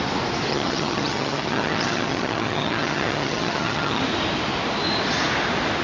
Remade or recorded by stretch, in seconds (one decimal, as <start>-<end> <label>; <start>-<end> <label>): 0.0-0.5 recorded; 0.5-4.0 remade; 4.0-5.8 recorded